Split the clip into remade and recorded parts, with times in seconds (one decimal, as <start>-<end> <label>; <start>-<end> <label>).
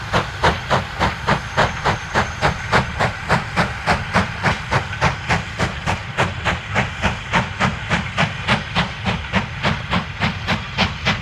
0.0-11.2 recorded